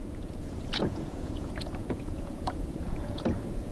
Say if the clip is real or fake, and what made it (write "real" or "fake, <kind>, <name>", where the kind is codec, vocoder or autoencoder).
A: fake, vocoder, Vocos